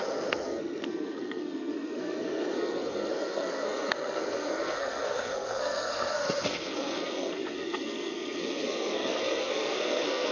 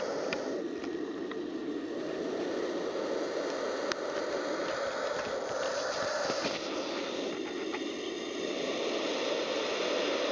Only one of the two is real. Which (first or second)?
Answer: second